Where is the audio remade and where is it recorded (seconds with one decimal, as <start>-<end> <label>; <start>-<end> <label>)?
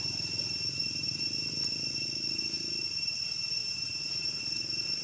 0.0-3.6 recorded; 3.6-4.4 remade; 4.4-5.0 recorded